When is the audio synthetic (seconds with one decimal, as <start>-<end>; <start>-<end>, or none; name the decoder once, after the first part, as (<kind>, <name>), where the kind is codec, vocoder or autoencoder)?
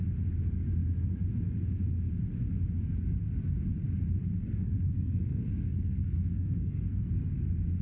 4.4-7.3 (codec, SNAC)